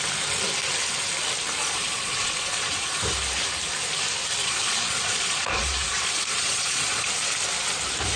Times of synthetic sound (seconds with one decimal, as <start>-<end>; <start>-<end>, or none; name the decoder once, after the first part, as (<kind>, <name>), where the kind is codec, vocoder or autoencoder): 1.6-3.0 (vocoder, Vocos); 4.4-7.1